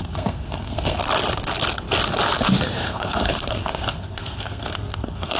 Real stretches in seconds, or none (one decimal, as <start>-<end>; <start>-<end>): 1.0-2.8